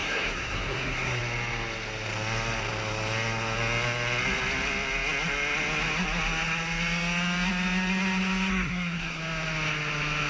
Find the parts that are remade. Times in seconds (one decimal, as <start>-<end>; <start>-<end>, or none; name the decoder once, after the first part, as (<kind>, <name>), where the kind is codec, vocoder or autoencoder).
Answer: 0.0-1.2 (codec, SNAC); 8.5-9.2